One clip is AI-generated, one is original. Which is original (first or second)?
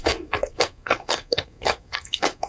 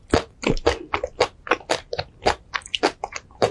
second